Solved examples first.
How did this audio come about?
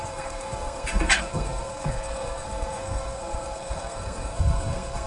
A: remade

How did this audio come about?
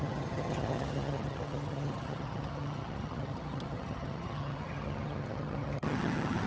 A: remade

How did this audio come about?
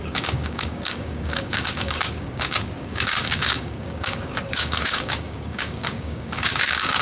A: remade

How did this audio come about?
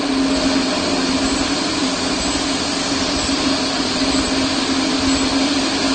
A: recorded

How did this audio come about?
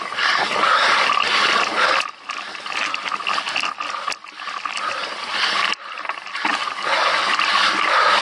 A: recorded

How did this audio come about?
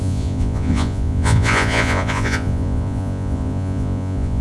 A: remade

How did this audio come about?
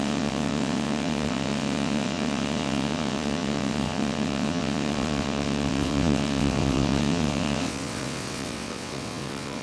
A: remade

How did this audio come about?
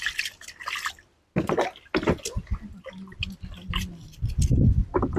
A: recorded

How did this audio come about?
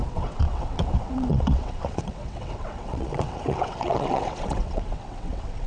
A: remade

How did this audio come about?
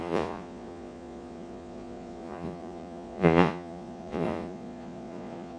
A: remade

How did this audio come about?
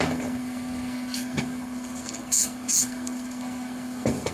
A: remade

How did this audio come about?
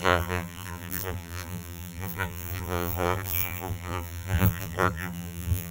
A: remade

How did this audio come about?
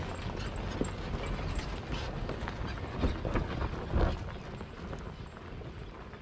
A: recorded